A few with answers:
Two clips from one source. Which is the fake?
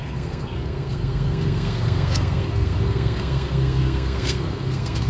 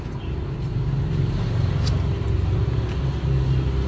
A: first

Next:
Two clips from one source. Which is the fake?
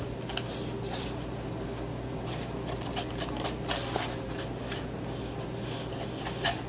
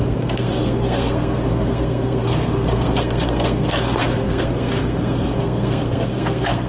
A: second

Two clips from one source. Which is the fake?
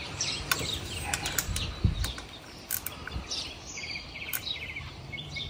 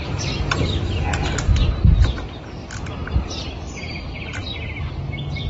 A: first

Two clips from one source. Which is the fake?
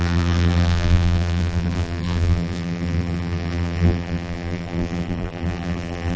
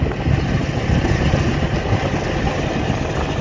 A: first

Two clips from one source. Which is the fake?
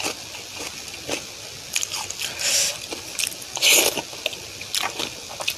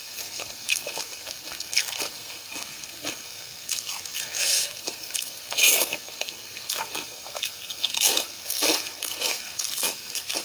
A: second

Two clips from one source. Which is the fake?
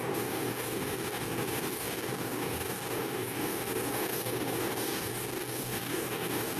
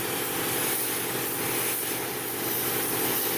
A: first